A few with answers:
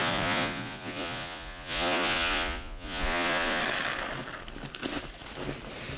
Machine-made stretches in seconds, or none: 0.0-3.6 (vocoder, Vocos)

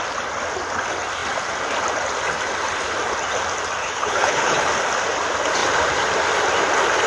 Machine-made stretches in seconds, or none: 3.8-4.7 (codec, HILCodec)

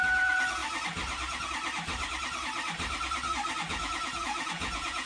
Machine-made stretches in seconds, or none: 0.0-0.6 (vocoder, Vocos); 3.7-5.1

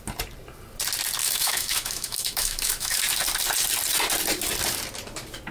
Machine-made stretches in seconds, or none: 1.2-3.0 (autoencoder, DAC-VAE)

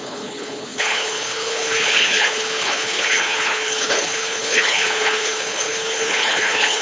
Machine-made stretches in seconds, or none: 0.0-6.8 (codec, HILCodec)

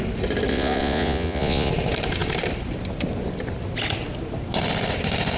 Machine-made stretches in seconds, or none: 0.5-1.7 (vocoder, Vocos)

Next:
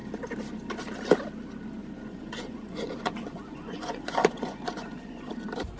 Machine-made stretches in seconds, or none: 1.8-5.3 (vocoder, Vocos)

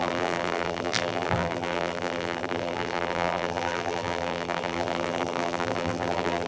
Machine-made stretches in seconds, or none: 0.0-6.5 (vocoder, BigVGAN v2)